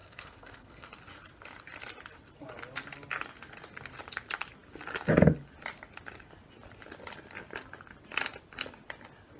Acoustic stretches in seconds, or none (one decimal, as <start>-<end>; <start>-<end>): 0.9-9.4